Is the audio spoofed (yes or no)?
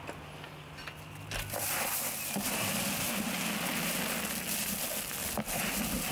no